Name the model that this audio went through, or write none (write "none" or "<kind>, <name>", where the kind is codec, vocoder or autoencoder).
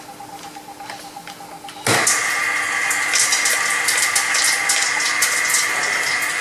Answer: none